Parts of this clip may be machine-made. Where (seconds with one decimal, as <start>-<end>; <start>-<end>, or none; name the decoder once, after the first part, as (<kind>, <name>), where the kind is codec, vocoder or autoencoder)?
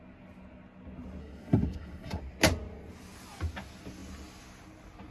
1.2-2.2 (codec, SNAC)